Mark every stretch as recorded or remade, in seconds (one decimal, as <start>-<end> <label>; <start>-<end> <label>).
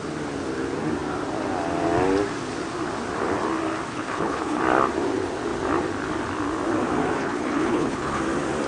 0.0-3.9 recorded; 3.9-4.6 remade; 4.6-7.2 recorded; 7.2-8.2 remade; 8.2-8.7 recorded